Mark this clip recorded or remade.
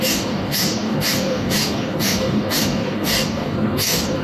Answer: remade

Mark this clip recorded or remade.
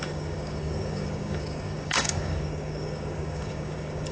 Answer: remade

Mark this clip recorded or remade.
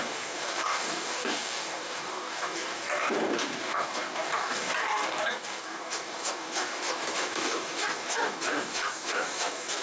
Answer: remade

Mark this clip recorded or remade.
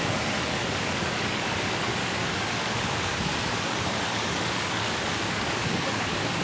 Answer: remade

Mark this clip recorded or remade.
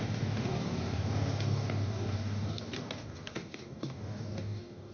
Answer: remade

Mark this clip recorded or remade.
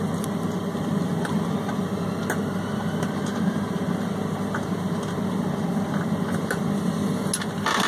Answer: recorded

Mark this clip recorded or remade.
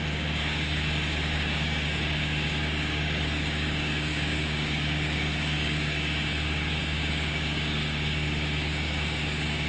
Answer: remade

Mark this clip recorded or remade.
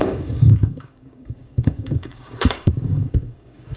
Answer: remade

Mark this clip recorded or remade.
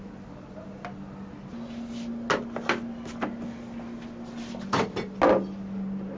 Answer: recorded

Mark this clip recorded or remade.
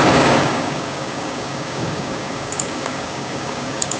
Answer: remade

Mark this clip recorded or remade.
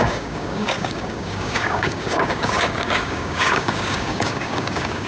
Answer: remade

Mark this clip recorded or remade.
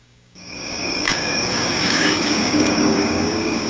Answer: remade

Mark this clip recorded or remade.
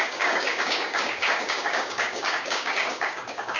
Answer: remade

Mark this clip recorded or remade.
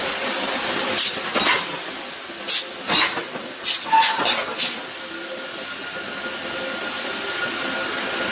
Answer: recorded